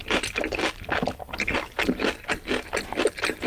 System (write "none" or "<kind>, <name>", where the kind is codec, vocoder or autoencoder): none